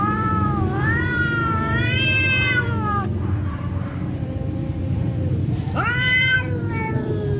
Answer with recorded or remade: remade